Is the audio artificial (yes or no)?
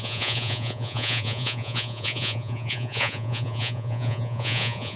yes